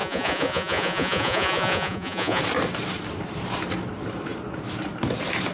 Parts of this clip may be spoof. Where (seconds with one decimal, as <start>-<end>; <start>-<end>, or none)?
0.0-2.4